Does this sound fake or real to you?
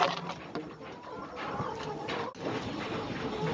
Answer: real